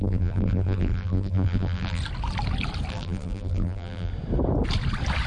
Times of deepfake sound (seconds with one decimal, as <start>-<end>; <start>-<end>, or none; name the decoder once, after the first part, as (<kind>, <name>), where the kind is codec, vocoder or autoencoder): 0.0-2.0 (vocoder, BigVGAN v2); 2.9-4.1